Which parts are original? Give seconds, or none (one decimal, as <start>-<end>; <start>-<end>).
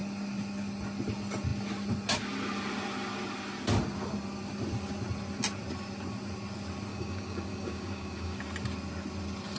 0.0-6.9; 8.4-9.6